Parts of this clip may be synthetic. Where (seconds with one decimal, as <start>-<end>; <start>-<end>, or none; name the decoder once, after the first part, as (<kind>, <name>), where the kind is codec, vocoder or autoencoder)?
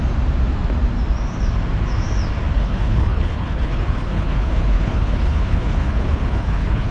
2.6-6.9 (codec, HILCodec)